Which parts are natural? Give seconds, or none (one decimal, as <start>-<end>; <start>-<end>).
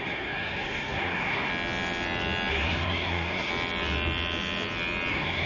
1.5-2.5; 3.5-5.1